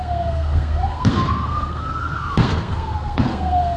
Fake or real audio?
fake